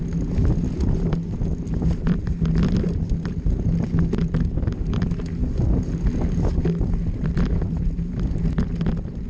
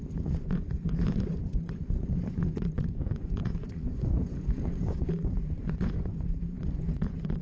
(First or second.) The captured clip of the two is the first